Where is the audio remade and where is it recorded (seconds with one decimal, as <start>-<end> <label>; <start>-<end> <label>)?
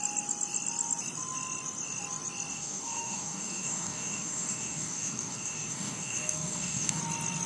0.0-2.5 recorded; 2.5-7.0 remade; 7.0-7.5 recorded